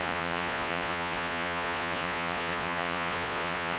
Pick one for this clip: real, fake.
fake